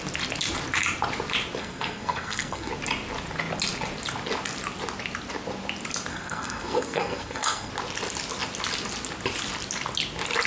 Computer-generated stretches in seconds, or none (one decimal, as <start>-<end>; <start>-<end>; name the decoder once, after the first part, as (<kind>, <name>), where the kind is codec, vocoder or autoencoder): 1.6-2.7 (codec, SNAC); 6.1-7.7